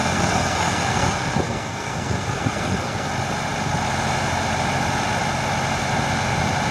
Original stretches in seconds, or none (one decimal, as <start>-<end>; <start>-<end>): 3.1-6.7